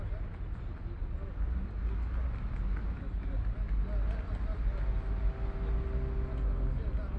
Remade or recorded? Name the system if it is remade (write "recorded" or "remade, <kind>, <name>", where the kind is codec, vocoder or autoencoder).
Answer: recorded